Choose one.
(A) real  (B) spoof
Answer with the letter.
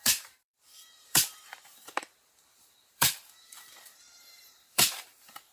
B